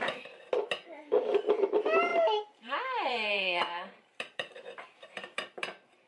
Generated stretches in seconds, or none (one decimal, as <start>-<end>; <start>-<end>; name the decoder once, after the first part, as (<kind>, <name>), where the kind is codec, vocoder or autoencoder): 2.1-6.1 (vocoder, BigVGAN v2)